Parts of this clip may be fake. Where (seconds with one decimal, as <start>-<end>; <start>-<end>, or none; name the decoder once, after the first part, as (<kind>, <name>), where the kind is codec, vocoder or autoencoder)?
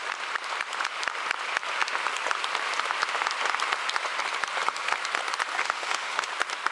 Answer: 5.5-6.3 (autoencoder, DAC-VAE)